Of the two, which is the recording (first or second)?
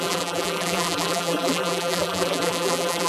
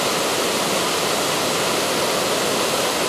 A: second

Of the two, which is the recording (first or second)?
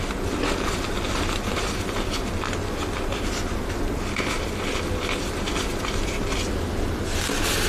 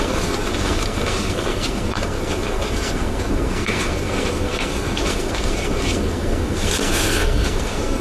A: first